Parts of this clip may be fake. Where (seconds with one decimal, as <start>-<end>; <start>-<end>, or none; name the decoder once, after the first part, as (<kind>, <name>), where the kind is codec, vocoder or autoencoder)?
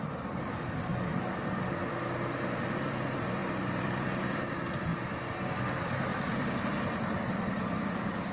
0.0-0.9 (vocoder, BigVGAN v2); 2.6-4.9; 5.5-8.3